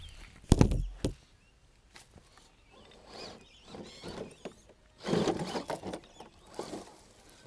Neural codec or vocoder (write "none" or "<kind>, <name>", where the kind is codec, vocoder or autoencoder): none